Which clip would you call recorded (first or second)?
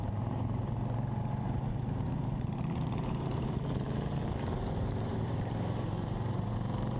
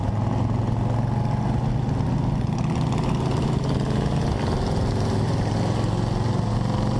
second